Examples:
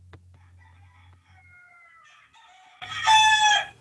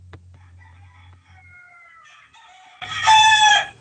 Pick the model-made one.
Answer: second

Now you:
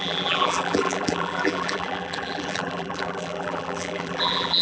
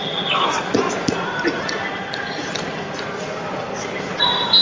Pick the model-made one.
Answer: first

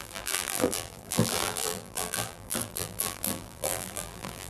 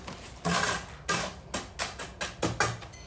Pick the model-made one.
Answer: first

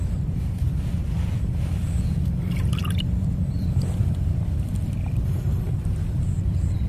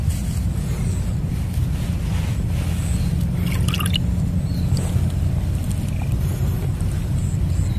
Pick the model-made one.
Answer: first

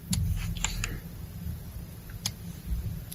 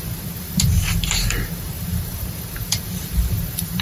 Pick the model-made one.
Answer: second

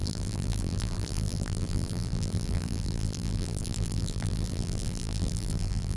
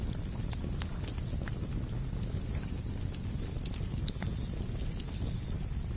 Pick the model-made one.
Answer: first